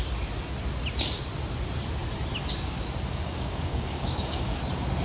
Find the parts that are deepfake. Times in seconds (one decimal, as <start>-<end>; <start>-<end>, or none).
3.1-4.6